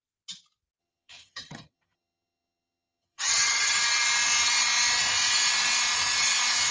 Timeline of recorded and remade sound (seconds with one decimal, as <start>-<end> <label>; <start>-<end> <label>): 0.0-0.8 recorded; 0.8-3.8 remade; 3.8-6.7 recorded